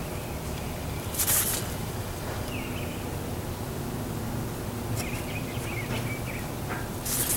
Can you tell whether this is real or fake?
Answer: real